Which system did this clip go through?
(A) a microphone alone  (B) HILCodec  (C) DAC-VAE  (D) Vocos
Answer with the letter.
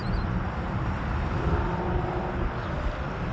A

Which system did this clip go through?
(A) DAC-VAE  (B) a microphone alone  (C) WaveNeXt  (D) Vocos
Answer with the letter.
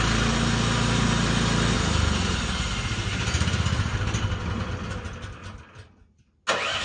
B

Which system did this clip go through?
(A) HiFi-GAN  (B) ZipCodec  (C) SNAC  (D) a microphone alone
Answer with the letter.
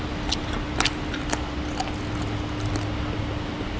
D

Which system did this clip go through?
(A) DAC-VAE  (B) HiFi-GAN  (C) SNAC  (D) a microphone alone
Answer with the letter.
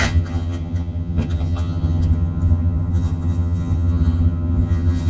B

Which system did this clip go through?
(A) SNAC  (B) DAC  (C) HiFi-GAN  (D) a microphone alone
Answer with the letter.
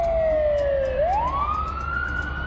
D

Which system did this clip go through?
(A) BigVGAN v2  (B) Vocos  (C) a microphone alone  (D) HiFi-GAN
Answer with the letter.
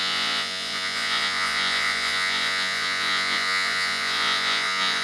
B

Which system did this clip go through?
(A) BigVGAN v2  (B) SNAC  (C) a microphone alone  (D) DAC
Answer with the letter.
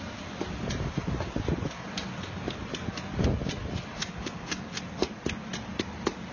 C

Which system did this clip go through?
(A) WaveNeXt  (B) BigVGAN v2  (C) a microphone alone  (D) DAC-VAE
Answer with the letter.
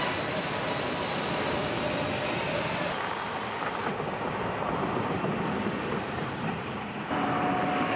C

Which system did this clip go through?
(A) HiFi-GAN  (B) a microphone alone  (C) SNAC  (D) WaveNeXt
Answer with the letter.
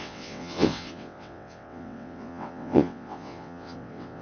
D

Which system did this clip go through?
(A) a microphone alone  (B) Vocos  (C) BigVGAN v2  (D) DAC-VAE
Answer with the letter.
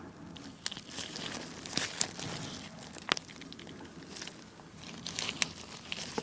A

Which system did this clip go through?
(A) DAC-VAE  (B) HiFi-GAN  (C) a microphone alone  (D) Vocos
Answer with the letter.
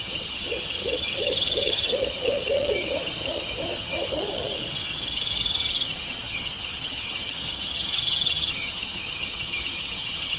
B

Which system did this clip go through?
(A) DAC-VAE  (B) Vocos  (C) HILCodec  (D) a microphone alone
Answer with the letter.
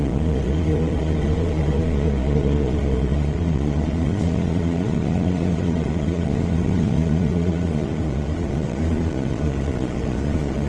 B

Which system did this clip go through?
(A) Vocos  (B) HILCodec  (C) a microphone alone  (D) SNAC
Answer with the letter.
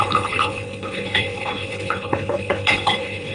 B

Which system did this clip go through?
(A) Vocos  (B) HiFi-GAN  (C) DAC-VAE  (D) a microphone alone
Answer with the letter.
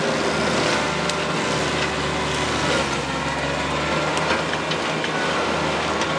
D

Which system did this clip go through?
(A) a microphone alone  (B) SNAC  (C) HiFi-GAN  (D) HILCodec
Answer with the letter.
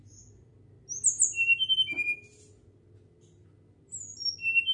A